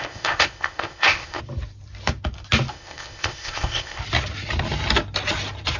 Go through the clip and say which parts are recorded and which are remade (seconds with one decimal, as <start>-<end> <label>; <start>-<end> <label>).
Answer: 0.0-1.4 remade; 1.4-2.7 recorded; 2.7-4.0 remade; 4.0-5.8 recorded